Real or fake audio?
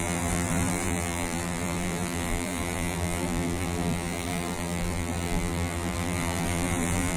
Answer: fake